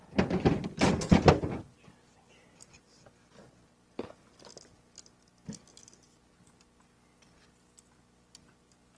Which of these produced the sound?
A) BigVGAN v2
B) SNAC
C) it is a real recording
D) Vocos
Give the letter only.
C